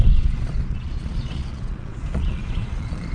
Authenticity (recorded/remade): remade